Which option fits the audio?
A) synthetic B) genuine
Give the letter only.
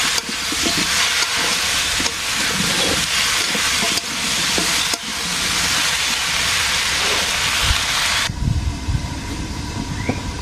B